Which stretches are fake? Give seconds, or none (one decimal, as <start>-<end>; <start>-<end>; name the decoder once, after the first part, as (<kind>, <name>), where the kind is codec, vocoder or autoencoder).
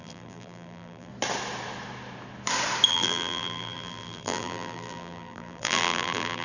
0.0-1.1 (vocoder, BigVGAN v2); 2.9-6.4